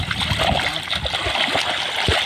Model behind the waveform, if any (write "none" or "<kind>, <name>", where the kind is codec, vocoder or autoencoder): none